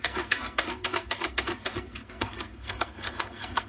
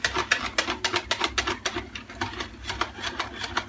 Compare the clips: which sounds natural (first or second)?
second